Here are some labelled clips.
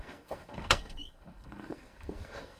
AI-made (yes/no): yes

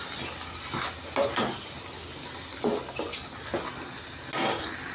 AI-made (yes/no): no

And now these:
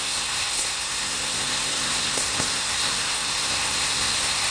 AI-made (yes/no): yes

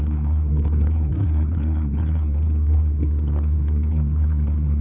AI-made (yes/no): yes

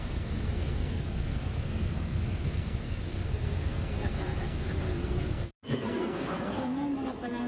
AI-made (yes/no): yes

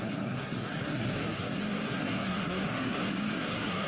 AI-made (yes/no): yes